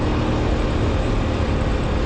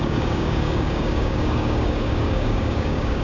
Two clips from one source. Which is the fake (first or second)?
second